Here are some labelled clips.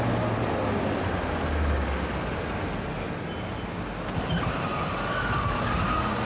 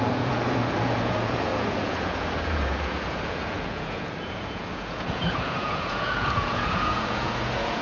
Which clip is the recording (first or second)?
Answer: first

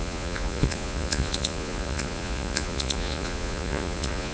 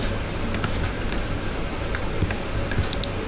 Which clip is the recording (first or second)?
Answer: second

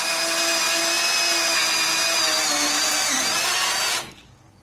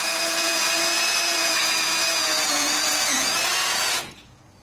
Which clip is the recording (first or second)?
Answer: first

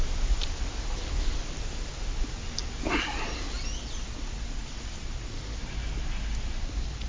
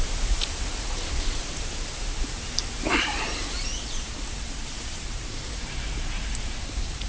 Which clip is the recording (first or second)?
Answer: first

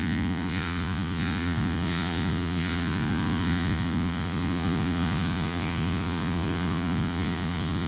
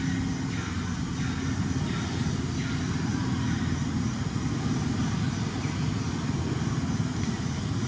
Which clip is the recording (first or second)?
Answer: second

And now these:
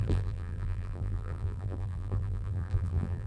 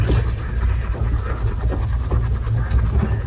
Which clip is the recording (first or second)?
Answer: second